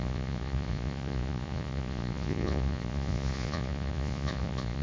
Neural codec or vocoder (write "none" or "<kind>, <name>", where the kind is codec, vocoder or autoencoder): vocoder, Vocos